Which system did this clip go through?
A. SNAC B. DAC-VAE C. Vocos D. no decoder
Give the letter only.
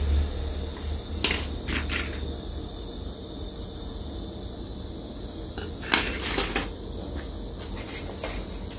D